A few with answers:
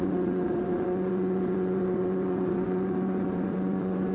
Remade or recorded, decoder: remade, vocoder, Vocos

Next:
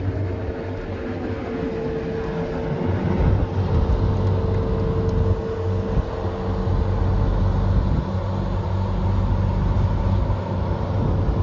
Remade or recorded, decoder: recorded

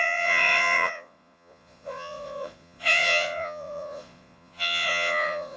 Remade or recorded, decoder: remade, vocoder, Vocos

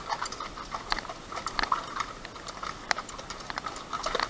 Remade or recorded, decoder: recorded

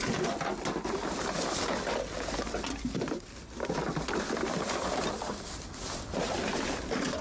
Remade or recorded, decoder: recorded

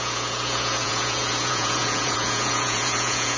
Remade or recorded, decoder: remade, vocoder, Vocos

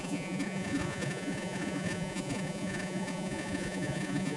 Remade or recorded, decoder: remade, vocoder, Vocos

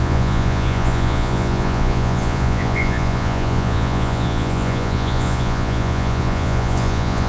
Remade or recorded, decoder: remade, vocoder, Vocos